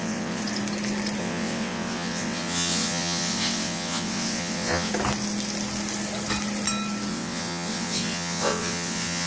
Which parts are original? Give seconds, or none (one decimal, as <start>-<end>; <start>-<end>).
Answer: 0.4-1.2; 4.9-7.1